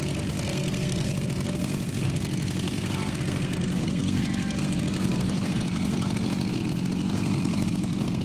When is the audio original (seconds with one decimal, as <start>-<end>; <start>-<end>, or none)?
none